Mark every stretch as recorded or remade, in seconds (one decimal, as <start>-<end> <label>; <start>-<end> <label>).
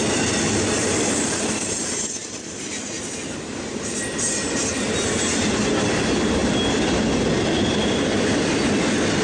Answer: 0.0-9.2 recorded